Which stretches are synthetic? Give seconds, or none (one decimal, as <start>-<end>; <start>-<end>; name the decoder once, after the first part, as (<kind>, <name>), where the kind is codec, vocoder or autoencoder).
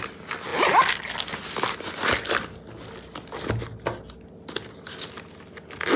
none